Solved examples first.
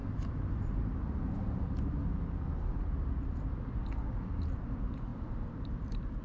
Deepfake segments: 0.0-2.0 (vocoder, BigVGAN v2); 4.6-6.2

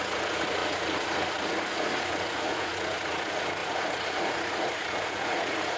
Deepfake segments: 0.0-5.8 (vocoder, Vocos)

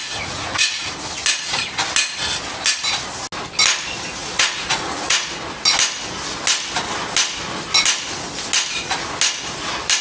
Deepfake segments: 0.0-0.9 (vocoder, Vocos); 4.2-5.3

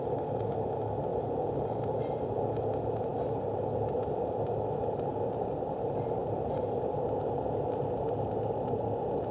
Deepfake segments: 1.1-2.4 (vocoder, BigVGAN v2); 6.2-6.8

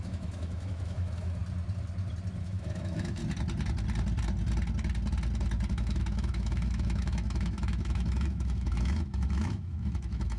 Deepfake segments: 0.0-1.4 (autoencoder, DAC-VAE); 2.4-3.2; 5.7-10.4

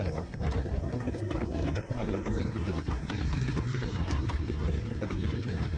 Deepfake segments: 0.0-5.8 (codec, SNAC)